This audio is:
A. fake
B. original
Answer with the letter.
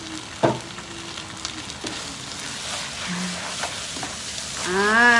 B